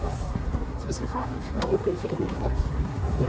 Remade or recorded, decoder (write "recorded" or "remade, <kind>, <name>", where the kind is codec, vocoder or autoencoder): remade, codec, SNAC